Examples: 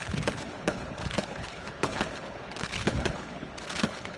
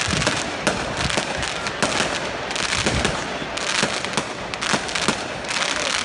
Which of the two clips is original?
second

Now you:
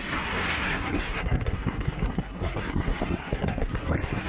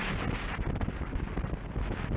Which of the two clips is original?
second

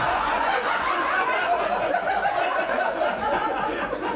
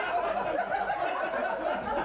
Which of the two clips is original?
second